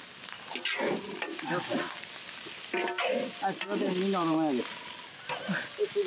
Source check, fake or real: real